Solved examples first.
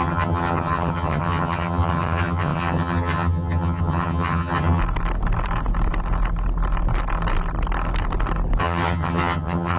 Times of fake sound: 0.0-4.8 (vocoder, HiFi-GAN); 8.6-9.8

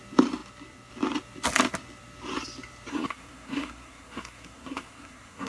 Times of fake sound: 2.9-5.5 (codec, SNAC)

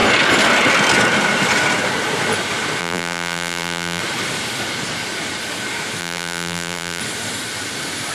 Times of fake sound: 2.8-4.0 (vocoder, BigVGAN v2); 6.0-7.0